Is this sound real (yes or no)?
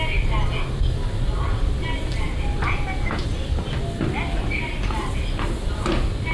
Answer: yes